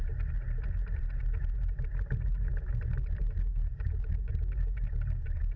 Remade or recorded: remade